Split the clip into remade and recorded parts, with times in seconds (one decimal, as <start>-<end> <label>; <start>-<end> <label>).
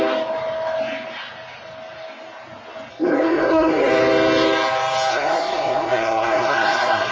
0.0-2.9 recorded; 2.9-3.9 remade; 3.9-5.1 recorded; 5.1-7.1 remade